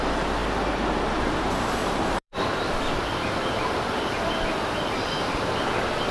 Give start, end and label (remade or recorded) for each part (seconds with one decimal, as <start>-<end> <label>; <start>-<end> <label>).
0.0-1.8 recorded; 1.8-5.5 remade; 5.5-6.1 recorded